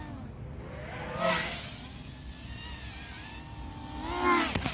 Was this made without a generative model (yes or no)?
yes